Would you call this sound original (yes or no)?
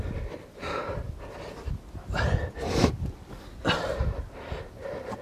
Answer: yes